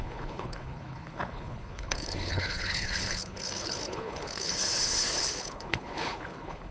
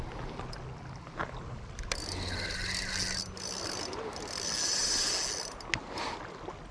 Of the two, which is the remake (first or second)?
first